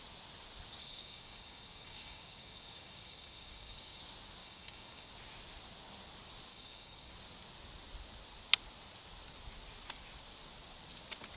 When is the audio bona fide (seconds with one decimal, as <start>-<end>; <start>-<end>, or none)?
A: 0.0-0.8; 4.0-4.4; 5.1-6.5; 7.1-11.4